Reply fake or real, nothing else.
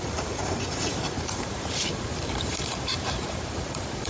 fake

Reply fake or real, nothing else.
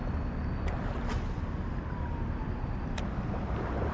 real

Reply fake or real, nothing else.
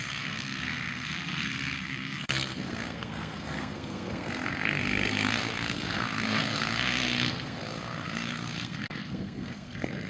fake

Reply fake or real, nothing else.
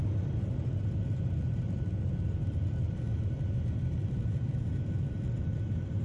fake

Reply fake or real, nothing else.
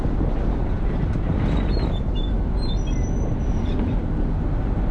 real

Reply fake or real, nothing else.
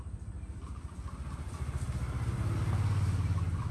fake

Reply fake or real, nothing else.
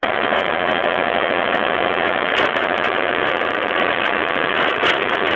fake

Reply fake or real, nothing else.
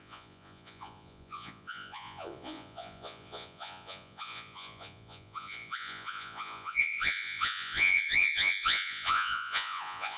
fake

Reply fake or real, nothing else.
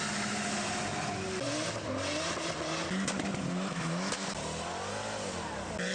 real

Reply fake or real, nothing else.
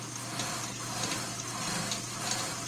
real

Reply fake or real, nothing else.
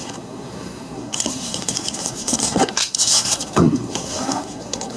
fake